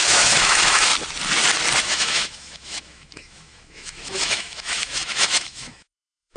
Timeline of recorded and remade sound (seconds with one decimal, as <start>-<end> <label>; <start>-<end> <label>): 0.0-0.9 remade; 0.9-1.8 recorded; 1.8-6.4 remade